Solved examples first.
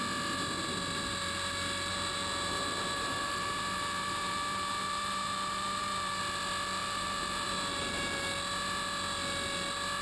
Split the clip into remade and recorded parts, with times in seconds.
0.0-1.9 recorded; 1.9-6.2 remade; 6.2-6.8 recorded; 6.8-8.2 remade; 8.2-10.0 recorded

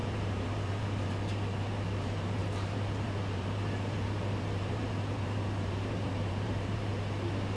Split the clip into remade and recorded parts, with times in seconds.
0.0-6.9 remade; 6.9-7.6 recorded

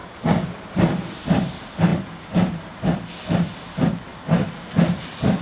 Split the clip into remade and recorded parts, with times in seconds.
0.0-5.4 recorded

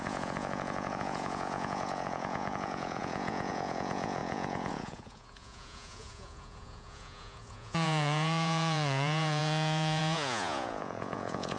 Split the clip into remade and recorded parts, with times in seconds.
0.0-11.6 remade

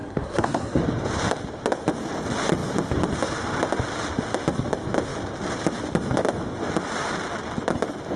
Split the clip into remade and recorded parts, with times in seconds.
0.0-0.8 remade; 0.8-8.2 recorded

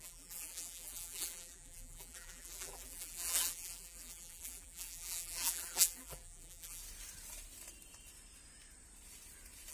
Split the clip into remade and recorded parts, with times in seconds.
0.0-6.8 remade; 6.8-9.7 recorded

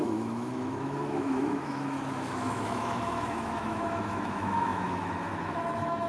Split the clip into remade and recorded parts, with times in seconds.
0.0-6.1 remade

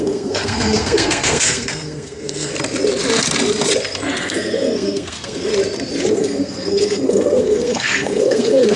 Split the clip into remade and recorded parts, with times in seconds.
0.0-2.5 remade; 2.5-4.2 recorded; 4.2-5.5 remade; 5.5-6.1 recorded; 6.1-8.8 remade